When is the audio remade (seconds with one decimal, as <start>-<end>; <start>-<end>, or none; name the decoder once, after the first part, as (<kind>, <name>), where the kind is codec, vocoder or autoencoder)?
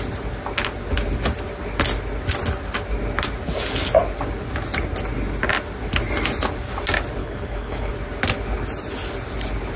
7.2-7.9 (codec, DAC)